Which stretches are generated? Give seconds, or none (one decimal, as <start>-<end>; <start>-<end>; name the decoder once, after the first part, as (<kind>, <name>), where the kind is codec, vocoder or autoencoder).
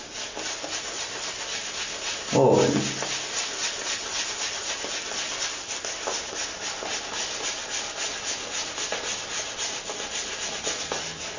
none